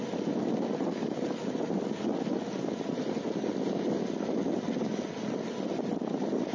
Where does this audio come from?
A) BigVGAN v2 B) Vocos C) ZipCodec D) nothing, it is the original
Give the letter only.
D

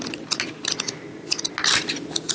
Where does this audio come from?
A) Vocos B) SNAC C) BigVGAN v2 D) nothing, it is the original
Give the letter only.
D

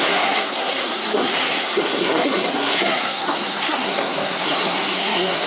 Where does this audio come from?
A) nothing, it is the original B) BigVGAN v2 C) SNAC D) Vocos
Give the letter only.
C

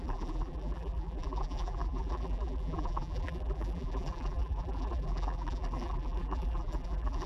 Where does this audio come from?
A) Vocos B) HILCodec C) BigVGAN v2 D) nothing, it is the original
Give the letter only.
C